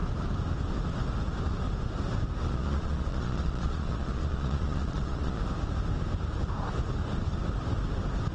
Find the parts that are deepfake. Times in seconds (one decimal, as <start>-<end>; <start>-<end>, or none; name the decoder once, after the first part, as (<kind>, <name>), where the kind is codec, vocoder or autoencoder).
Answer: 2.5-5.4 (vocoder, Vocos)